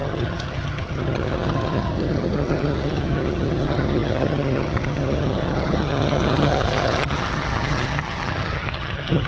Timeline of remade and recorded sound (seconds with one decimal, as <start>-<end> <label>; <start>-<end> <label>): 0.0-9.3 remade